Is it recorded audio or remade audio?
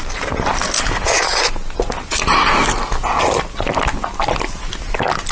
recorded